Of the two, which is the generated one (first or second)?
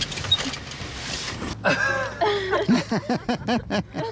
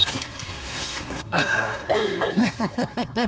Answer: second